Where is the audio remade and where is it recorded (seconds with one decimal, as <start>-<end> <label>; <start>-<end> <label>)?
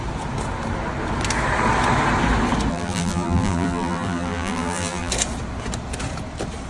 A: 0.0-2.7 recorded; 2.7-5.1 remade; 5.1-6.7 recorded